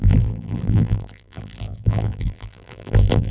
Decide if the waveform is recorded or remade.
remade